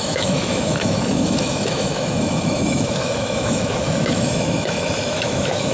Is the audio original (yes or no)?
no